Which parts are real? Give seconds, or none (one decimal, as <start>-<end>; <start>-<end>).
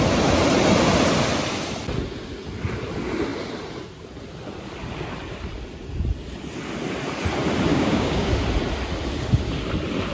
0.0-7.7; 8.3-10.1